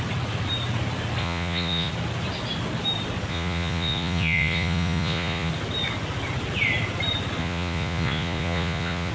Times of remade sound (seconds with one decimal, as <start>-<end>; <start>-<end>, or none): 1.2-1.9; 3.3-5.5; 7.4-9.1